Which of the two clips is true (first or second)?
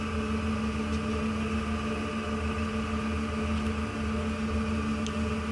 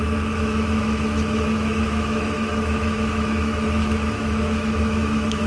first